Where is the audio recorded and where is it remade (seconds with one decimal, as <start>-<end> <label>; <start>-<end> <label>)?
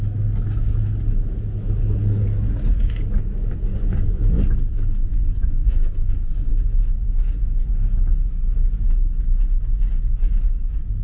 0.0-3.7 recorded; 3.7-4.2 remade; 4.2-5.0 recorded; 5.0-6.5 remade; 6.5-11.0 recorded